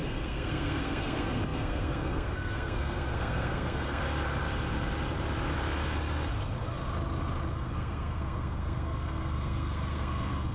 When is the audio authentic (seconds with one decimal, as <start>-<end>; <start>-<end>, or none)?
4.0-7.5